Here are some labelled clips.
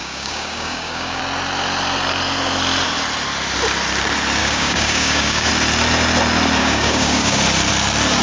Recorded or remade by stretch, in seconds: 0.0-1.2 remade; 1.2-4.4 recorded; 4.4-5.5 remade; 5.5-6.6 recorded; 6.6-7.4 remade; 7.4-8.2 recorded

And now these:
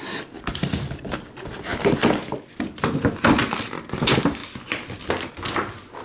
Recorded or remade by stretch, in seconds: 0.0-6.0 recorded

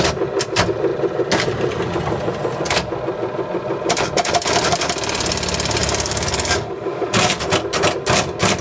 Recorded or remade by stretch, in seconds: 0.0-5.8 recorded; 5.8-7.2 remade; 7.2-8.6 recorded

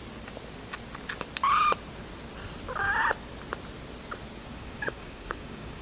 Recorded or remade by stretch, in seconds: 0.0-4.5 recorded; 4.5-5.8 remade

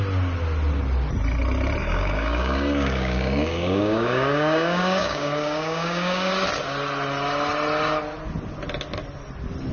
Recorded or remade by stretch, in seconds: 0.0-1.8 recorded; 1.8-6.3 remade; 6.3-9.7 recorded

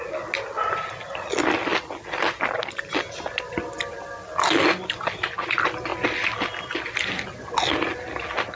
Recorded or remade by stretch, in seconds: 0.0-8.6 recorded

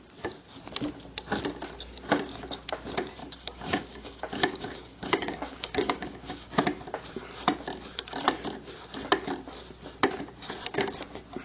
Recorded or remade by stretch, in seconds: 0.0-3.2 recorded; 3.2-6.5 remade; 6.5-11.4 recorded

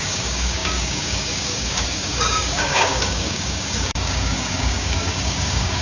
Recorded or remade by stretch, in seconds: 0.0-5.8 remade